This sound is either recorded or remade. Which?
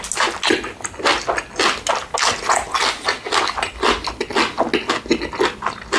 recorded